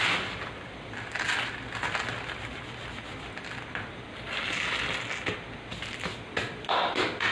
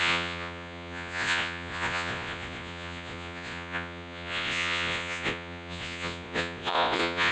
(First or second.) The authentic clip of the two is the first